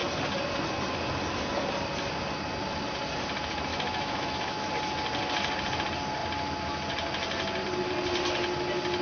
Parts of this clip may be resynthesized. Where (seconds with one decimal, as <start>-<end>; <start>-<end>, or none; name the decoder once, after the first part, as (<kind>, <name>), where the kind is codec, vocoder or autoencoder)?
3.7-4.7 (autoencoder, DAC-VAE)